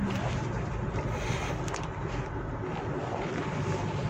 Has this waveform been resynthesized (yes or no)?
no